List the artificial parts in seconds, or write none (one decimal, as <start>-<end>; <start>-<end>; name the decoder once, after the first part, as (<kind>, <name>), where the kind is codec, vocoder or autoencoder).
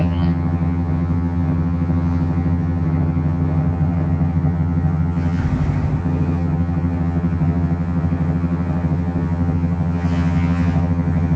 0.0-5.4 (vocoder, HiFi-GAN); 6.0-11.4